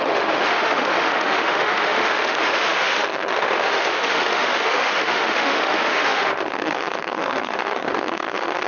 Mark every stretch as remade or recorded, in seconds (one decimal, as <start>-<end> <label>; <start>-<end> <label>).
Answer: 0.0-8.7 remade